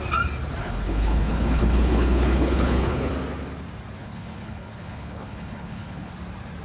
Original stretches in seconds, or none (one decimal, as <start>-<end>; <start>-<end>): 0.0-0.6; 3.1-4.0; 6.1-6.6